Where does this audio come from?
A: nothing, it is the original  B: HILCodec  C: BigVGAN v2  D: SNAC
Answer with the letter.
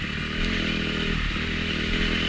A